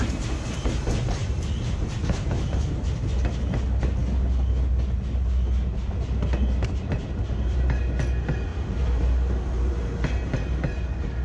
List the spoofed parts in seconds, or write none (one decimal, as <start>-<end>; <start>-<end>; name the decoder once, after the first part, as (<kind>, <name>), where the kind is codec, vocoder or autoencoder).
1.2-2.8 (vocoder, BigVGAN v2); 8.5-9.7